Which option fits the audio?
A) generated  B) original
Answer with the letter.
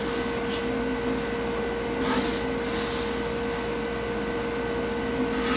B